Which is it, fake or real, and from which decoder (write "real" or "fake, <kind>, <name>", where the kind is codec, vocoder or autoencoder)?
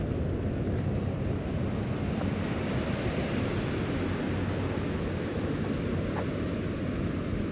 real